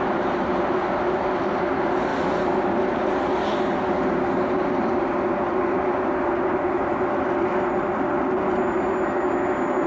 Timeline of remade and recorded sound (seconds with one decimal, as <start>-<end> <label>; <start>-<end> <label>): 0.0-9.9 recorded